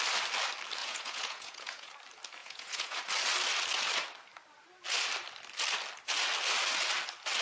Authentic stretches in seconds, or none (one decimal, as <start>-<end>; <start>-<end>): 0.0-0.8; 1.9-2.4; 3.0-7.4